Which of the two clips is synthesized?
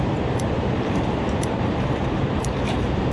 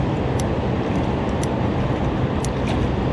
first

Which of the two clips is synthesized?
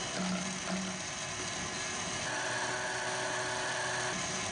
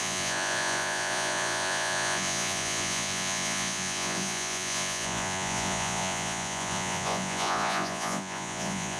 second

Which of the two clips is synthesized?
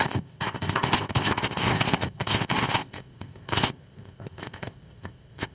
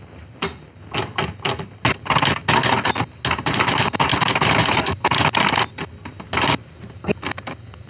first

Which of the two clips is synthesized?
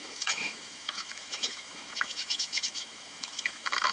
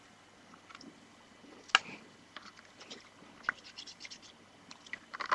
first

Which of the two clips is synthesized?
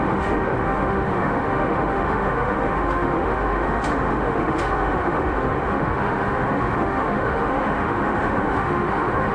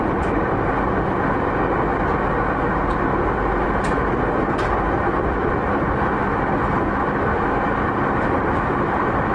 first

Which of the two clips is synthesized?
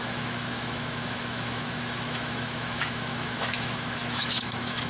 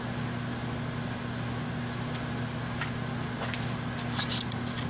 first